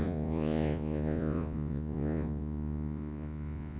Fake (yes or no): yes